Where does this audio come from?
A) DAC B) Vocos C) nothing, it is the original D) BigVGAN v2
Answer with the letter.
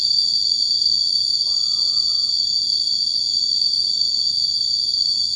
C